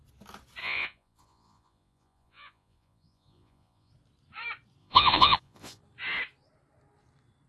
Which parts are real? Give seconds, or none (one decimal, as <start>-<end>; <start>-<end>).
0.0-0.6; 3.9-4.8; 5.8-7.5

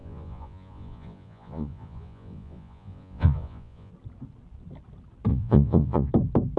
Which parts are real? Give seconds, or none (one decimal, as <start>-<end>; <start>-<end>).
3.9-5.3; 6.1-6.6

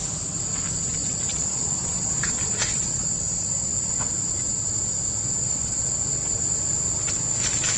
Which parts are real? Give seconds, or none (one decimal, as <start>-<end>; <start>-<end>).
0.0-1.3; 3.1-5.4; 5.9-7.8

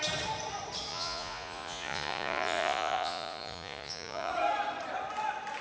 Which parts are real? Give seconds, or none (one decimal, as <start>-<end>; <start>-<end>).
0.0-0.9; 4.3-5.6

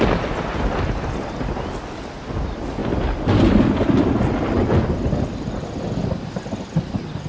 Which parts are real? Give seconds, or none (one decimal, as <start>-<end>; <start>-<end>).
0.0-7.3

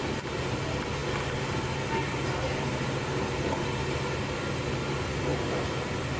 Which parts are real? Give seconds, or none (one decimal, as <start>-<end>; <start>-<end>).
0.0-6.2

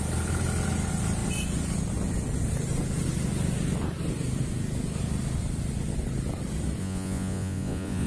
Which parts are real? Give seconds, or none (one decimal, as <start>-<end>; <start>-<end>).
0.0-6.8